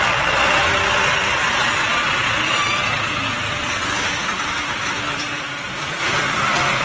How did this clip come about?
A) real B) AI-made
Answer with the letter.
A